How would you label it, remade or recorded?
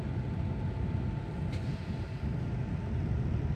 recorded